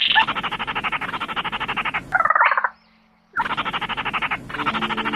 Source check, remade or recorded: recorded